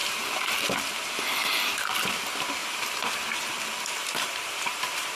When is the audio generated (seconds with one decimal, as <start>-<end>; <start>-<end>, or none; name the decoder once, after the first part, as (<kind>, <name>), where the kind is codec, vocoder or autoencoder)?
0.0-0.6 (vocoder, BigVGAN v2); 1.4-2.2; 2.6-3.5; 4.0-5.1